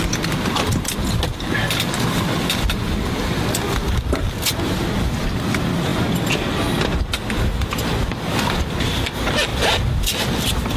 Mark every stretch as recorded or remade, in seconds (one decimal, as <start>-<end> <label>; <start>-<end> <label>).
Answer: 0.0-10.8 recorded